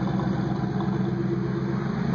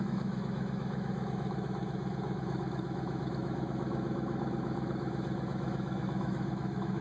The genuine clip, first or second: first